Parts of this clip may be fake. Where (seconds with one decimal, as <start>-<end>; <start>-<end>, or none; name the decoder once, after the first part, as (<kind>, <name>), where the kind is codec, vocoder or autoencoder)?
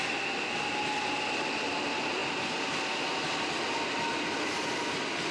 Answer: none